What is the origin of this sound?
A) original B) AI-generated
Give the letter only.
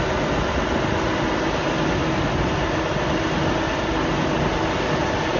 A